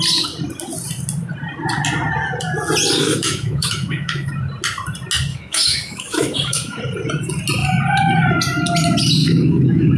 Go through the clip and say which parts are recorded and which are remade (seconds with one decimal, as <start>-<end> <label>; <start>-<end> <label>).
0.0-3.0 recorded; 3.0-4.3 remade; 4.3-5.3 recorded; 5.3-6.8 remade; 6.8-9.2 recorded; 9.2-10.0 remade